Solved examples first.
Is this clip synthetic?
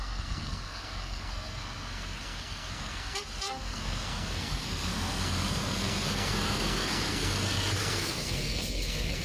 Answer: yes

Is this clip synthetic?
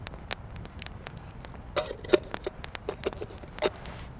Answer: no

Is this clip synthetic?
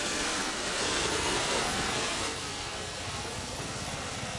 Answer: yes